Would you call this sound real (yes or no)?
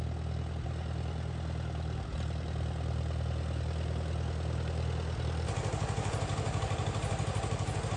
yes